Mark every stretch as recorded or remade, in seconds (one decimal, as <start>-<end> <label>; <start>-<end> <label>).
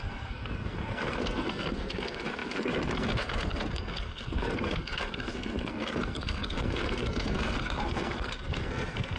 0.0-9.2 remade